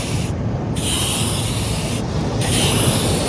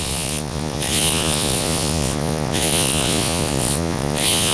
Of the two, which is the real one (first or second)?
first